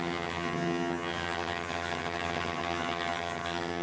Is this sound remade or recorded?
remade